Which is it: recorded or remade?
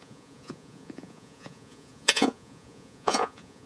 remade